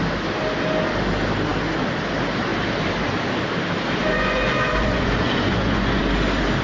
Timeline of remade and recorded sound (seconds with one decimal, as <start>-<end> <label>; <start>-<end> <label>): 0.0-4.0 recorded; 4.0-6.0 remade; 6.0-6.6 recorded